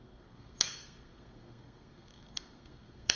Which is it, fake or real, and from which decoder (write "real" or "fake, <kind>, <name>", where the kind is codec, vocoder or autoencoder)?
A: fake, codec, SNAC